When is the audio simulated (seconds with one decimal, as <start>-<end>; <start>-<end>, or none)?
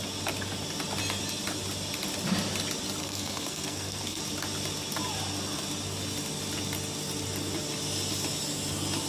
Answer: 3.0-4.2